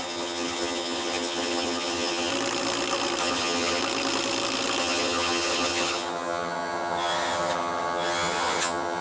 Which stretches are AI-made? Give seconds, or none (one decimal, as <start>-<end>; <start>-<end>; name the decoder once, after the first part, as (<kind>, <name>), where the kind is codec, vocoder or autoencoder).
0.0-2.3 (vocoder, HiFi-GAN); 3.2-3.8; 4.8-9.0